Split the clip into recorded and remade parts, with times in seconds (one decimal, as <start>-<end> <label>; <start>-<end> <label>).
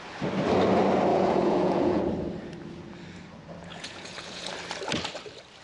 0.0-1.1 recorded; 1.1-2.0 remade; 2.0-3.7 recorded; 3.7-4.5 remade; 4.5-5.6 recorded